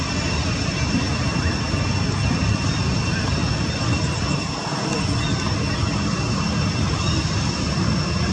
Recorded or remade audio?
recorded